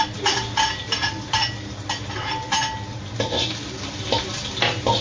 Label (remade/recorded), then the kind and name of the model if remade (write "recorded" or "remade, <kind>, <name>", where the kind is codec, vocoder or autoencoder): recorded